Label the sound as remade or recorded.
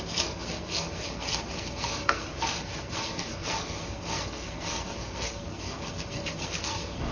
remade